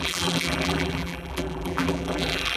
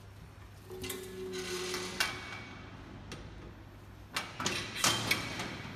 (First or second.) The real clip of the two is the second